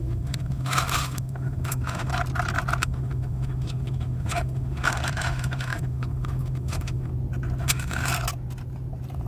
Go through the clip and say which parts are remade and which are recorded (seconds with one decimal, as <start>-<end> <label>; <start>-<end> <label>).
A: 0.0-2.1 remade; 2.1-2.8 recorded; 2.8-7.1 remade; 7.1-7.6 recorded; 7.6-8.1 remade; 8.1-9.3 recorded